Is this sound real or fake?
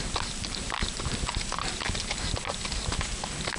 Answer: real